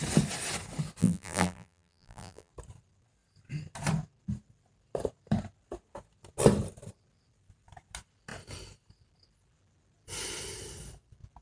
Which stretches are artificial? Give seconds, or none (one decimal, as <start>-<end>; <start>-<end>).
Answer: 1.0-2.5